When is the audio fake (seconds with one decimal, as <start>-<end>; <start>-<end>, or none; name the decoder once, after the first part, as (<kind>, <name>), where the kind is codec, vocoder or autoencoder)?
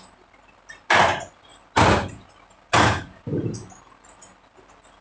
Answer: none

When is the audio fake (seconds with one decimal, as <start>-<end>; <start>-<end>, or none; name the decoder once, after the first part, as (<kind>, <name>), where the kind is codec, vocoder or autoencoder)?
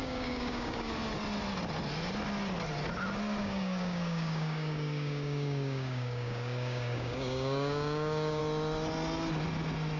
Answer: 0.0-0.9 (codec, DAC); 3.4-8.4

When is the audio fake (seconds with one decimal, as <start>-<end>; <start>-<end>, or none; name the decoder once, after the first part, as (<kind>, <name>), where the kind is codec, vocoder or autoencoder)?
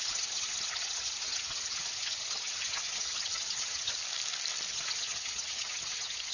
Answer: 0.0-4.0 (vocoder, HiFi-GAN); 4.7-6.3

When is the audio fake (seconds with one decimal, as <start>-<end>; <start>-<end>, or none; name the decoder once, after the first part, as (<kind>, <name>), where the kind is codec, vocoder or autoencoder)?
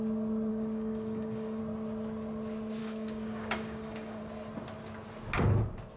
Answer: 0.5-1.6 (codec, DAC); 2.8-4.2